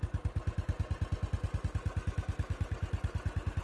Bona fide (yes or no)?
yes